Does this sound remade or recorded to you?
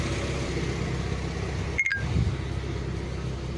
recorded